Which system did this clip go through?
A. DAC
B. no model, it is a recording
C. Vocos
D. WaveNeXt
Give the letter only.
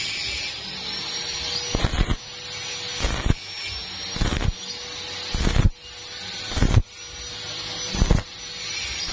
B